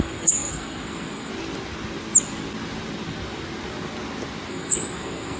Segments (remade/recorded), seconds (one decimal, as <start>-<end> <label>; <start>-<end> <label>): 0.0-1.3 remade; 1.3-4.5 recorded; 4.5-5.4 remade